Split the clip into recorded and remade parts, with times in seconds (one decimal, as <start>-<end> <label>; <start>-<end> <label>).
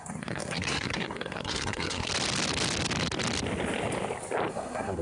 0.0-2.1 remade; 2.1-4.5 recorded; 4.5-5.0 remade